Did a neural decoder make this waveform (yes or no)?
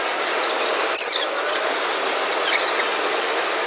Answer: no